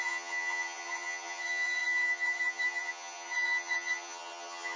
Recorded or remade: remade